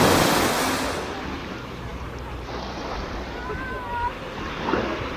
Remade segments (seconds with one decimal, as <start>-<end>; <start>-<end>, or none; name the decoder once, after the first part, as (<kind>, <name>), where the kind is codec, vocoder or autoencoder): none